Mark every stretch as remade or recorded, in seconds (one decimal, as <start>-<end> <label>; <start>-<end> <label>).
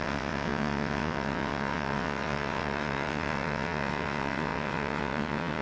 0.0-5.6 remade